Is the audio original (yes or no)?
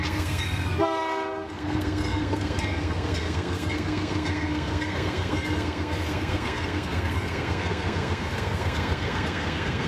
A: no